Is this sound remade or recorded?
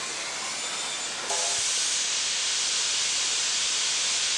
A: recorded